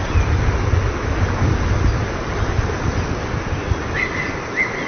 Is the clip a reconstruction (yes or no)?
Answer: no